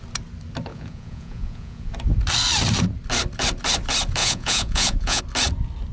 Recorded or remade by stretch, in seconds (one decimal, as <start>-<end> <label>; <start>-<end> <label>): 0.0-0.7 recorded; 0.7-1.9 remade; 1.9-4.2 recorded; 4.2-5.2 remade; 5.2-5.9 recorded